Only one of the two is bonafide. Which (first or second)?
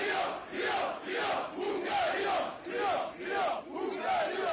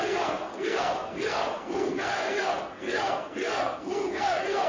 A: first